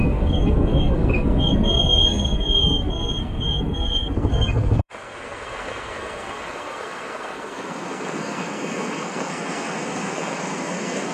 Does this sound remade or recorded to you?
remade